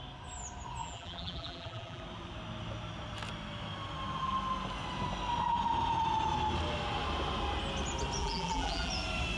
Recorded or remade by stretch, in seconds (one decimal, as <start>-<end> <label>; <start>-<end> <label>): 0.0-0.8 recorded; 0.8-2.0 remade; 2.0-8.2 recorded; 8.2-8.9 remade; 8.9-9.4 recorded